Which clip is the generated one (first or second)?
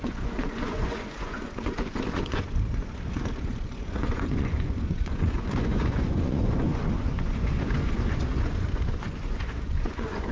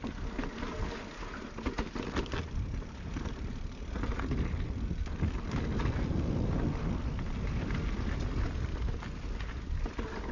first